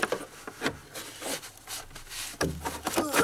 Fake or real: real